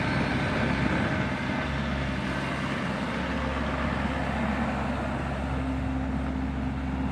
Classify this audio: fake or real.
real